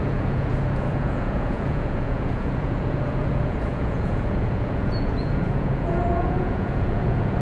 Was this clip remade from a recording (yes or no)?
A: yes